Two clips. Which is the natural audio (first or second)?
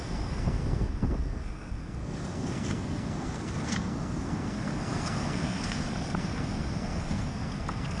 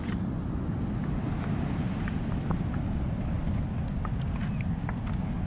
second